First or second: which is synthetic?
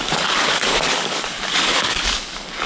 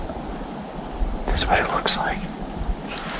first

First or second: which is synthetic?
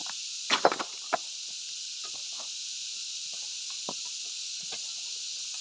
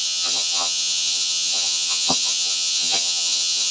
second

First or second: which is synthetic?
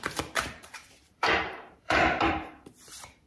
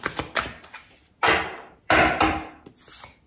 first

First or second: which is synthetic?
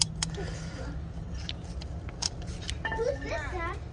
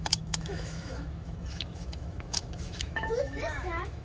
second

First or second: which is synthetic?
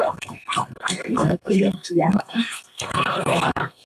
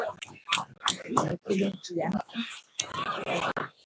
first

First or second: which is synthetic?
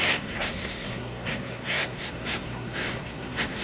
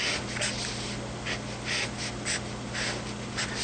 first